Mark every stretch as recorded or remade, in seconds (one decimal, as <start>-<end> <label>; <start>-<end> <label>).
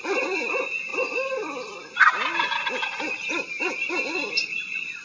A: 0.0-5.0 recorded